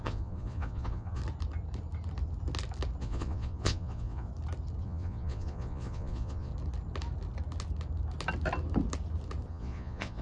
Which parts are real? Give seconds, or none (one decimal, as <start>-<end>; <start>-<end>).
1.2-3.0; 4.3-4.8; 6.5-9.5

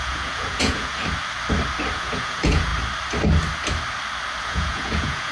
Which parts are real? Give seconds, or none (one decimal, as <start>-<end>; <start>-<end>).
1.0-1.9; 2.7-4.4

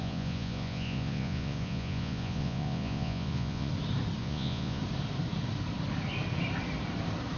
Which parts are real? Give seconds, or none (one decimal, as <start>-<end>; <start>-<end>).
3.7-4.2; 4.8-7.4

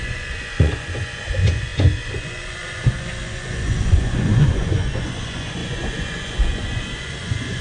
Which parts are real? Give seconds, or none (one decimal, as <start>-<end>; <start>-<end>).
none